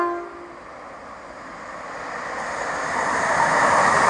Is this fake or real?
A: real